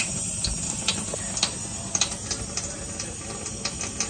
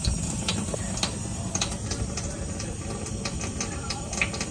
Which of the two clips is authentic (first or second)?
first